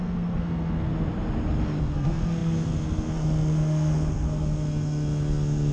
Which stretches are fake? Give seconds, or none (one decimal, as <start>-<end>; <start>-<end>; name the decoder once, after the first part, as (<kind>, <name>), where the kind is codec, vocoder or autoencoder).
0.0-0.9 (codec, SNAC); 1.8-5.7